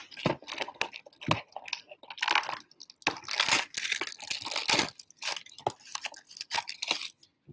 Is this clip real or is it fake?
real